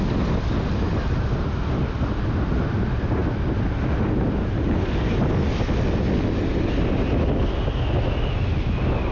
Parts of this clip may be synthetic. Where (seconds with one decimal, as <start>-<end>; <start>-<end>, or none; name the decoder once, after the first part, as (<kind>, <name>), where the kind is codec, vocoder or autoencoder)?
none